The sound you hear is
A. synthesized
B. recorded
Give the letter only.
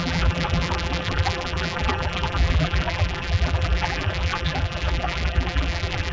A